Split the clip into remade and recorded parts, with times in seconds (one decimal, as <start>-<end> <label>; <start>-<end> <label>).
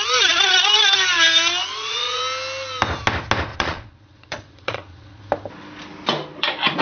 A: 0.0-1.6 recorded; 1.6-2.2 remade; 2.2-3.5 recorded; 3.5-5.2 remade; 5.2-6.8 recorded